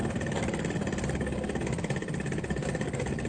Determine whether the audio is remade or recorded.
recorded